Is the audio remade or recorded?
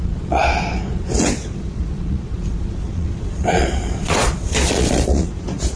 remade